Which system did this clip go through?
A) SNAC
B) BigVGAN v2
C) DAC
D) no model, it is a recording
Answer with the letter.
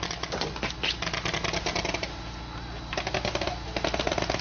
D